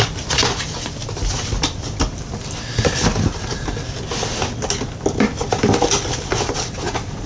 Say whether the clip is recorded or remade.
recorded